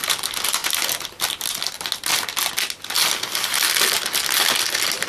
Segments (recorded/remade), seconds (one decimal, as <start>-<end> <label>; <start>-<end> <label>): 0.0-5.1 recorded